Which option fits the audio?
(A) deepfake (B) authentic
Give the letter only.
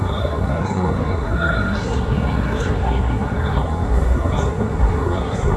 A